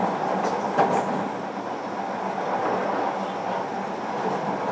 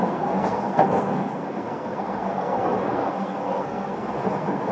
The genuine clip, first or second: first